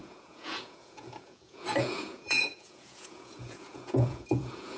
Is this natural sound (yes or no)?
no